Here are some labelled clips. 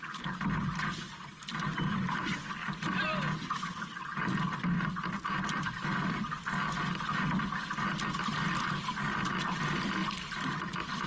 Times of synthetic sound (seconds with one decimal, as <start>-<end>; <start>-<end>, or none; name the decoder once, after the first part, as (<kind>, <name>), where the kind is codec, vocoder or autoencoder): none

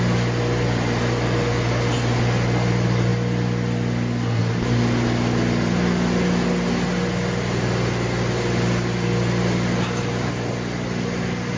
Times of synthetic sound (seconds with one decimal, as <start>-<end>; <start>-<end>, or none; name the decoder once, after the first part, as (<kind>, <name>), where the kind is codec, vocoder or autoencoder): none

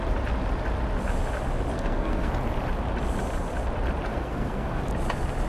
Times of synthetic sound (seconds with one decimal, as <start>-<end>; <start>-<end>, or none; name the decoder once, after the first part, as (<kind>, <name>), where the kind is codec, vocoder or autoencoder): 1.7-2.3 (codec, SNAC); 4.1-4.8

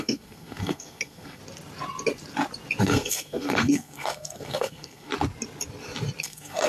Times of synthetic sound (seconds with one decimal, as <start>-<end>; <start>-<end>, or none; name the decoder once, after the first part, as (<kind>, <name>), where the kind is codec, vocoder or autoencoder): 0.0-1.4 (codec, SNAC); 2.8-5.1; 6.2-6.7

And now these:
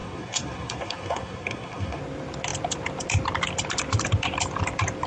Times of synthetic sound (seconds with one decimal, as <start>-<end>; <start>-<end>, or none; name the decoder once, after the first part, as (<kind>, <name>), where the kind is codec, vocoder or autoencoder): 0.0-2.0 (codec, SNAC)

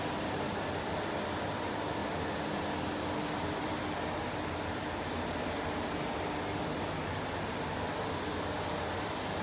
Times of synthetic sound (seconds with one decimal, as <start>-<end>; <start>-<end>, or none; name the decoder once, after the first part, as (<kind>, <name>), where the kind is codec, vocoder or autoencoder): none

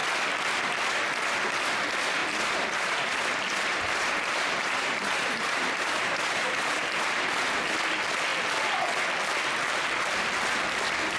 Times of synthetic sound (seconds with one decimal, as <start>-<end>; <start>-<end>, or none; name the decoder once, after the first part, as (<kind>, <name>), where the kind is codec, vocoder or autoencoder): 2.2-7.3 (vocoder, BigVGAN v2)